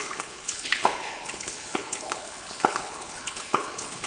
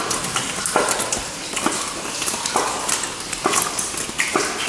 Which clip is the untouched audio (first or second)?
second